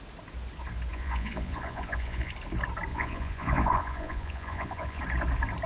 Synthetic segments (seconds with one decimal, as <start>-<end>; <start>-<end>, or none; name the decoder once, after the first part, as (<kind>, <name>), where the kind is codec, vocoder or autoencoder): 0.9-2.3 (vocoder, Vocos); 2.9-5.0